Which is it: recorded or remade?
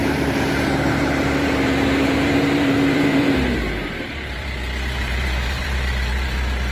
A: remade